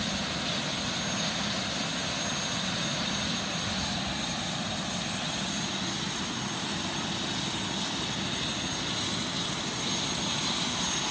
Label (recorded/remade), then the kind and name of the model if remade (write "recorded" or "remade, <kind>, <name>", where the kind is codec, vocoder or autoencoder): recorded